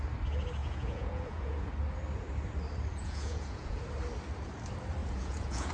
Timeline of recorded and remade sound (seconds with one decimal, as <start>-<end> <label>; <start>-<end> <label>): 0.0-0.6 recorded; 0.6-1.7 remade; 1.7-2.9 recorded; 2.9-3.8 remade; 3.8-5.0 recorded; 5.0-5.7 remade